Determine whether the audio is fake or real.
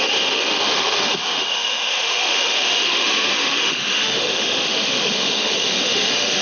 fake